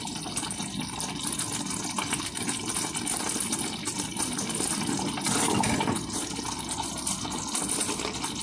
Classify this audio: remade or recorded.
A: recorded